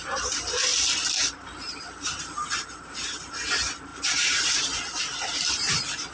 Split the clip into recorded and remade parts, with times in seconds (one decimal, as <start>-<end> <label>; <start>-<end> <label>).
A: 0.0-6.1 remade